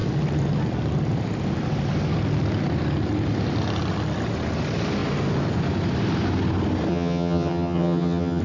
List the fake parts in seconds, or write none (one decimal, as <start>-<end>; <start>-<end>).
6.9-8.4